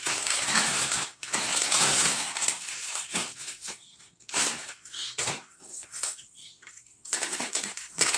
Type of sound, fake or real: fake